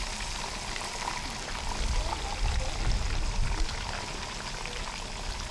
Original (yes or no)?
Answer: yes